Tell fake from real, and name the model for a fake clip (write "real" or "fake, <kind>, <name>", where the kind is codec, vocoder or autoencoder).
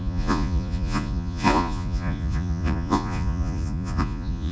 fake, vocoder, Vocos